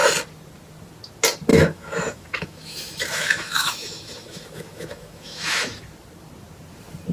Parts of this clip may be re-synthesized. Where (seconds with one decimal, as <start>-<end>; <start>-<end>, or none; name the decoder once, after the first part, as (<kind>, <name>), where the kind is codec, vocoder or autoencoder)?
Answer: 1.5-5.8 (autoencoder, DAC-VAE)